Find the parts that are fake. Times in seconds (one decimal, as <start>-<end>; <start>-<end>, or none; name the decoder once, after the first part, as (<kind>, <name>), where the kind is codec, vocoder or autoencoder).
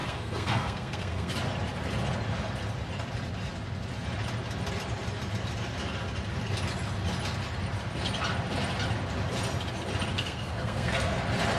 0.0-1.3 (codec, SNAC); 10.1-11.2